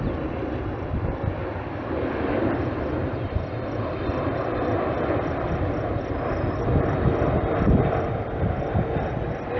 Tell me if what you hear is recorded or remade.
remade